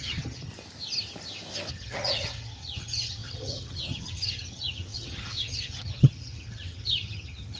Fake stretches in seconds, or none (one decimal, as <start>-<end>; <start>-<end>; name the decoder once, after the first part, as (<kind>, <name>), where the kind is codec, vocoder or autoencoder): 0.0-0.5 (vocoder, HiFi-GAN); 1.7-7.6